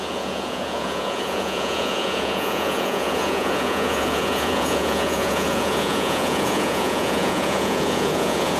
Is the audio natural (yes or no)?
no